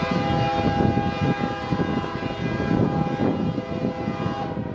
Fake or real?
real